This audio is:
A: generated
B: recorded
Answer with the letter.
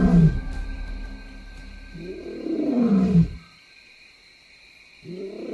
B